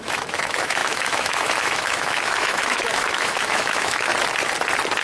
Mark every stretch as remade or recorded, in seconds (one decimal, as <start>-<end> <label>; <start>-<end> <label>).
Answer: 0.0-4.1 remade; 4.1-5.0 recorded